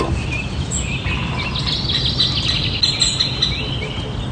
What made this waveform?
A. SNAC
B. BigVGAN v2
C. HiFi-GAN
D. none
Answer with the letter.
D